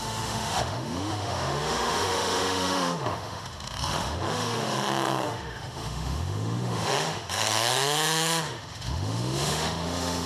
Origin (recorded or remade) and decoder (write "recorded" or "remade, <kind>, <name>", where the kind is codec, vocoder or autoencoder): remade, autoencoder, DAC-VAE